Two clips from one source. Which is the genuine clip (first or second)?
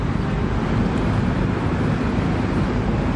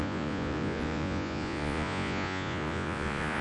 first